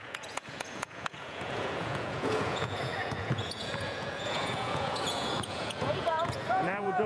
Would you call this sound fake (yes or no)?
yes